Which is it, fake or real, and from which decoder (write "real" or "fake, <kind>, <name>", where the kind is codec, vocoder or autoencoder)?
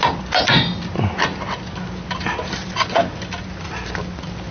real